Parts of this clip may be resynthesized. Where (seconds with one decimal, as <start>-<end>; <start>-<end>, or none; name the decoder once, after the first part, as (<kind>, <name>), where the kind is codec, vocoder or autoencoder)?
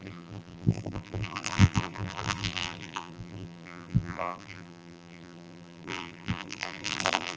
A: 0.0-7.4 (vocoder, BigVGAN v2)